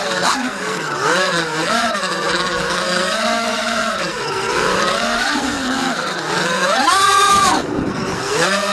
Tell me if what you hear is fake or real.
fake